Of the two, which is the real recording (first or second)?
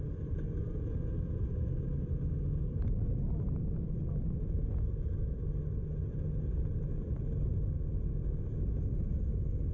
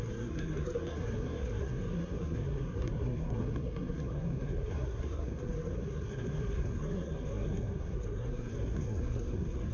first